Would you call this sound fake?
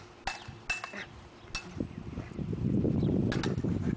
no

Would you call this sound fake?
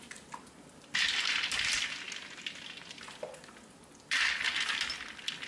no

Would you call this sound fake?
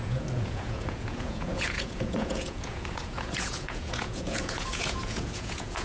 yes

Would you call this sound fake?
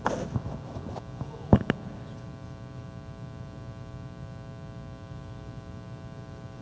no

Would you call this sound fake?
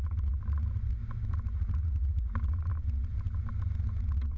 no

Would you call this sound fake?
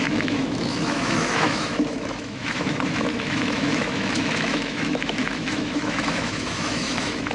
yes